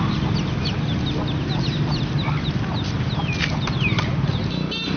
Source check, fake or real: real